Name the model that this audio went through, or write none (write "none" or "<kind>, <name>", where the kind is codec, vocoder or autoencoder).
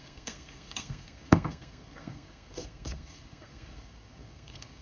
codec, SNAC